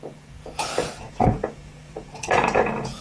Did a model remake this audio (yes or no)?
yes